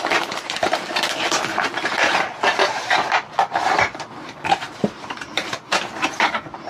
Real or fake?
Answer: fake